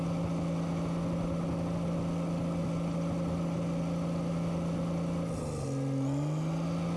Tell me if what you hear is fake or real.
real